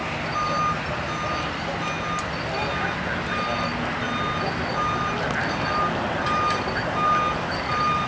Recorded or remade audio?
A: recorded